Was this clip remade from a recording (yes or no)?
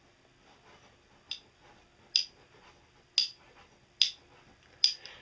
no